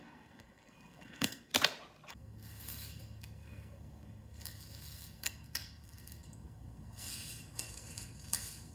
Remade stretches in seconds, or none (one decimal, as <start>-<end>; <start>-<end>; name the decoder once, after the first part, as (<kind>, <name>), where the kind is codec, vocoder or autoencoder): 0.0-1.5 (codec, SNAC); 2.1-8.7